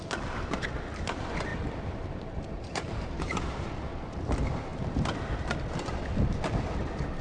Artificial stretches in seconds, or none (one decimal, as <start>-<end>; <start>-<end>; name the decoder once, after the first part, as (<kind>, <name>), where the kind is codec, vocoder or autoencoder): 1.5-3.4 (vocoder, BigVGAN v2)